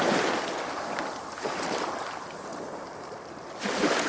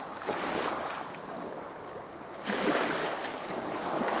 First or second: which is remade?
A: second